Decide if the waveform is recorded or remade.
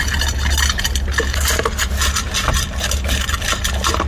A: recorded